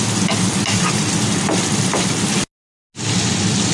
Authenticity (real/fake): real